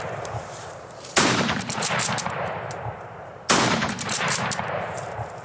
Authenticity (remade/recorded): remade